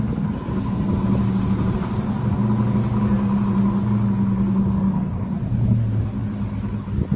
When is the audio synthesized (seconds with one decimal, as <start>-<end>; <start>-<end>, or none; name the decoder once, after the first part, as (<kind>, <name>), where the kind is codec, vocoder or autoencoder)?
none